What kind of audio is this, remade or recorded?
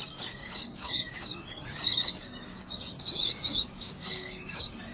remade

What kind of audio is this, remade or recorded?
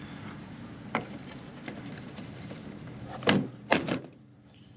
remade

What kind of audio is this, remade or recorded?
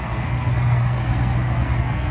remade